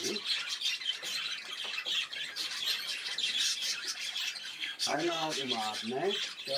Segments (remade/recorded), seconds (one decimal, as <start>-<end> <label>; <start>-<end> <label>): 0.0-4.5 recorded; 4.5-5.5 remade; 5.5-6.6 recorded